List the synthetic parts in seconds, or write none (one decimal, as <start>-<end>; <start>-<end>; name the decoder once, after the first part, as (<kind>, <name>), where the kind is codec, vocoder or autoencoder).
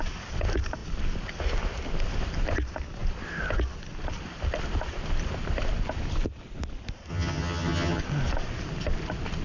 7.1-8.0 (vocoder, HiFi-GAN)